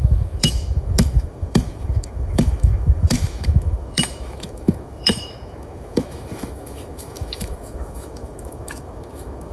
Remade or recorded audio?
remade